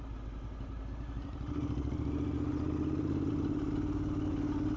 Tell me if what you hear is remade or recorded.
recorded